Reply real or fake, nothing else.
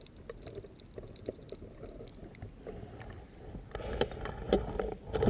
real